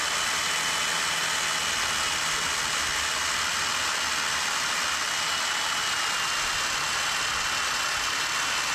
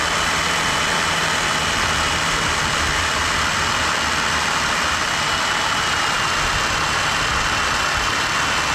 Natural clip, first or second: first